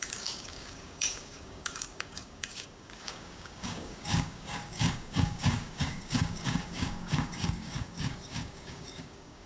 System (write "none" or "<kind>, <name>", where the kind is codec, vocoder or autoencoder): codec, DAC